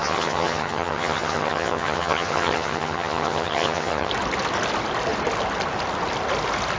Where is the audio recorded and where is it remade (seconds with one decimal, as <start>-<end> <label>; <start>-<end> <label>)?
0.0-4.1 remade; 4.1-6.8 recorded